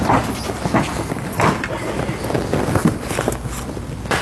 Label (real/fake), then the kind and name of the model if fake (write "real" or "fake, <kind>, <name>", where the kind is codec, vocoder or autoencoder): real